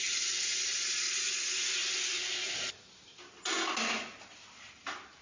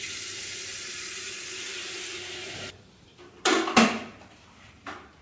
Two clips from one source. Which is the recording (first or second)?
first